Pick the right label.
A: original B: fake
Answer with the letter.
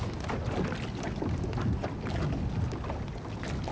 A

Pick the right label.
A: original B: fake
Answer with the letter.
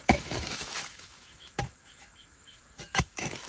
B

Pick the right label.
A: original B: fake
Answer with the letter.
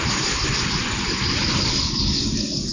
A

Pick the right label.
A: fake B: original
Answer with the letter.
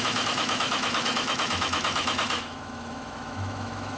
A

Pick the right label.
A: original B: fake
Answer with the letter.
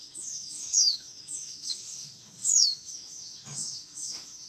B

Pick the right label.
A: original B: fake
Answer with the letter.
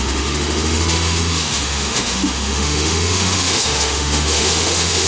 B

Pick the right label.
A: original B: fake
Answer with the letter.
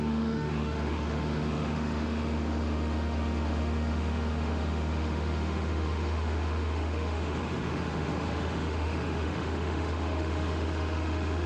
B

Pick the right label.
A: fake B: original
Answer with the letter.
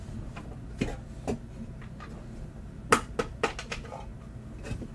B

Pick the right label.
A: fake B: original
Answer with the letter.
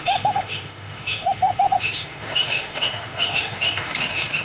A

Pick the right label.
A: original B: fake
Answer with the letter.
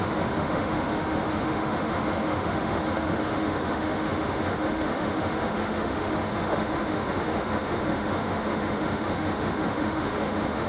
B